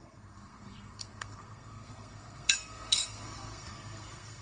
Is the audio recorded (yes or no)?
no